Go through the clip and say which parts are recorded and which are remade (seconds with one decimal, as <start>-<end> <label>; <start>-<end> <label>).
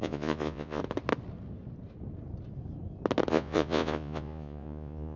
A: 0.0-0.8 remade; 0.8-3.3 recorded; 3.3-5.2 remade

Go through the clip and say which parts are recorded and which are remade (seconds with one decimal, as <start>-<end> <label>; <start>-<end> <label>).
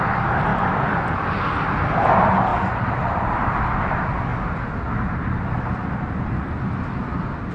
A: 0.0-0.5 recorded; 0.5-1.3 remade; 1.3-2.5 recorded; 2.5-3.9 remade; 3.9-7.5 recorded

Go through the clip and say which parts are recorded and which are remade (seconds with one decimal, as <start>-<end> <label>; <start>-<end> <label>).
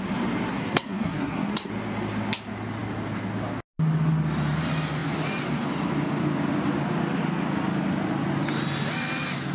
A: 0.0-0.5 recorded; 0.5-1.7 remade; 1.7-9.5 recorded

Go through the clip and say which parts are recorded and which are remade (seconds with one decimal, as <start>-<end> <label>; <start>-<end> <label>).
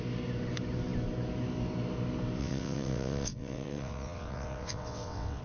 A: 0.0-2.4 recorded; 2.4-5.4 remade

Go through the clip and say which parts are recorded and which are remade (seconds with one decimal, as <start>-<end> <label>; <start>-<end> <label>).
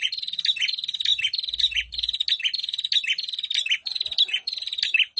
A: 0.0-5.2 recorded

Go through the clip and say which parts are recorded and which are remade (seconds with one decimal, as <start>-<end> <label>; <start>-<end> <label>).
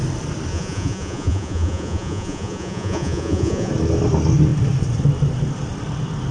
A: 0.0-0.5 recorded; 0.5-3.7 remade; 3.7-6.3 recorded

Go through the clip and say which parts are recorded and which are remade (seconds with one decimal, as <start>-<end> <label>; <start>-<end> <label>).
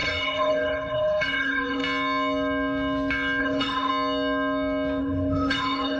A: 0.0-1.8 remade; 1.8-3.4 recorded; 3.4-3.9 remade; 3.9-5.0 recorded; 5.0-6.0 remade